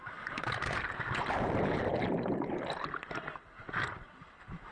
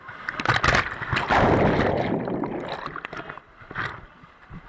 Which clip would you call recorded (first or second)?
second